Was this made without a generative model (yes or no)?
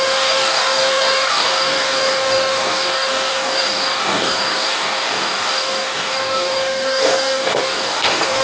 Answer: no